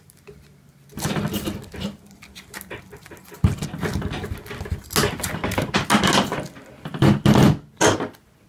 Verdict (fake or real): real